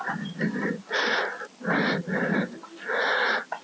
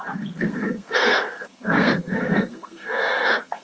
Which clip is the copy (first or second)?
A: second